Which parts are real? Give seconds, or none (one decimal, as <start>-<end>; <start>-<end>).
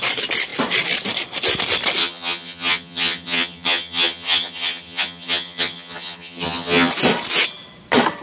0.0-2.0; 6.9-8.2